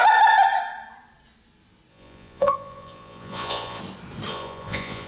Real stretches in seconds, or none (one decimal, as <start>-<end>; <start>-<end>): 0.0-1.9; 3.8-4.3